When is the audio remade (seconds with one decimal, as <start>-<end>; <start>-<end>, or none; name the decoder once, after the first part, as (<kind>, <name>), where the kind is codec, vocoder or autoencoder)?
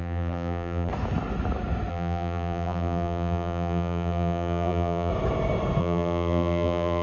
0.0-0.9 (vocoder, BigVGAN v2); 1.9-5.1; 5.8-7.0